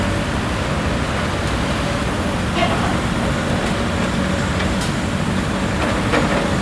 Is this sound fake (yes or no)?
no